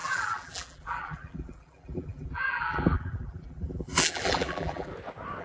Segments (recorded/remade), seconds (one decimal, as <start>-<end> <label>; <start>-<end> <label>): 0.0-4.9 remade; 4.9-5.4 recorded